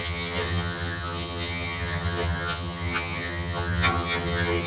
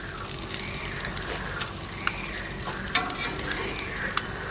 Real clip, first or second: second